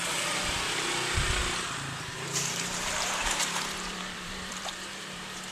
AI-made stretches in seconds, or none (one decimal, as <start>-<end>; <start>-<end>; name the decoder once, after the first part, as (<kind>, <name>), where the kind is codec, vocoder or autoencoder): 2.1-5.5 (vocoder, BigVGAN v2)